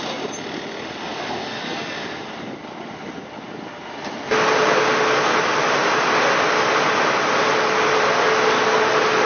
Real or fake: real